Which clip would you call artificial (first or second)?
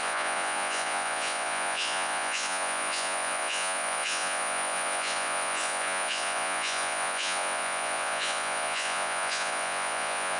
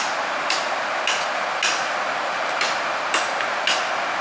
first